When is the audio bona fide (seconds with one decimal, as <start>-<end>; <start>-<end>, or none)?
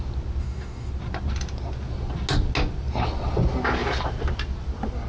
0.0-0.4; 0.9-5.1